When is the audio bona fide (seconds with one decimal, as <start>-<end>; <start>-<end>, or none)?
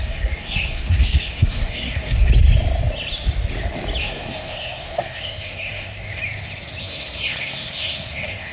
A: 2.3-4.0; 6.2-6.8